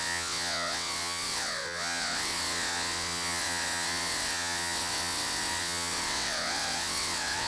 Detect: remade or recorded remade